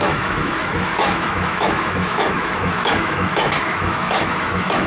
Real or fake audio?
fake